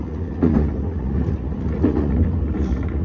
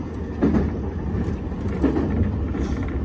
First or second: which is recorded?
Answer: second